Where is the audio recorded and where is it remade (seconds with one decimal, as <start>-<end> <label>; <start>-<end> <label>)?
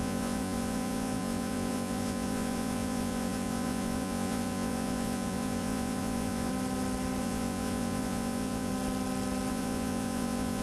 0.0-6.5 remade; 6.5-7.2 recorded; 7.2-8.7 remade; 8.7-9.5 recorded; 9.5-10.6 remade